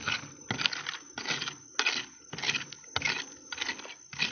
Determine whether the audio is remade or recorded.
recorded